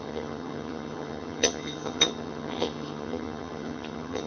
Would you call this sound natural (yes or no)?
no